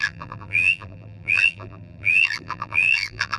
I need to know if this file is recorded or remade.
remade